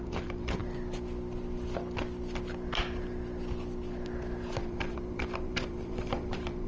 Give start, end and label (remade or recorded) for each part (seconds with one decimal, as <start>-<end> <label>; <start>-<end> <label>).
0.0-0.6 remade; 0.6-4.6 recorded; 4.6-6.7 remade